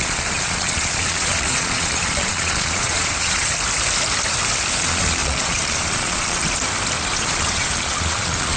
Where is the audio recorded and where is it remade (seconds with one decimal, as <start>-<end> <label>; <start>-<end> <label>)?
0.0-3.5 remade; 3.5-4.7 recorded; 4.7-6.4 remade; 6.4-7.0 recorded; 7.0-8.6 remade